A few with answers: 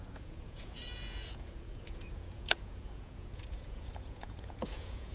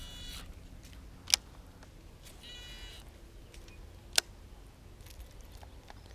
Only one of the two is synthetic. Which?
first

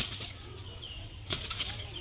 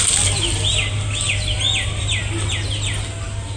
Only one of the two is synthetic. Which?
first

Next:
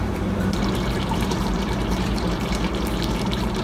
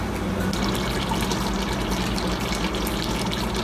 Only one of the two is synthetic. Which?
first